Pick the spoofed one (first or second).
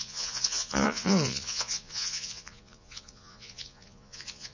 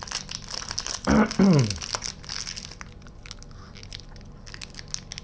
first